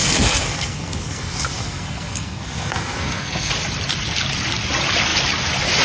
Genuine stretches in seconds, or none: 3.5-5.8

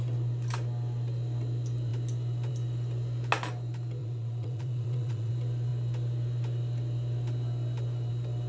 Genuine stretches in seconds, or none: 0.0-4.0; 5.3-8.5

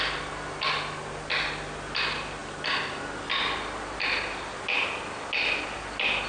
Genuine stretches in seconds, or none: 0.0-6.3

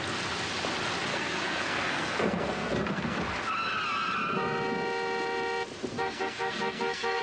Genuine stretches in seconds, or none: 0.0-1.1; 3.2-5.9